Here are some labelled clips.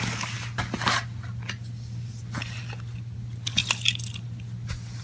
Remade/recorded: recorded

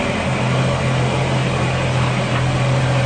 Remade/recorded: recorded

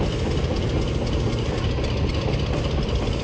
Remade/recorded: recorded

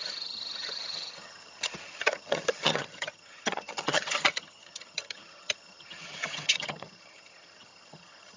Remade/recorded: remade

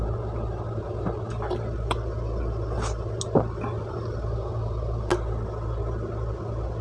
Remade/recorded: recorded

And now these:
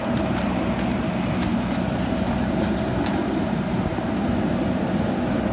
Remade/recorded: recorded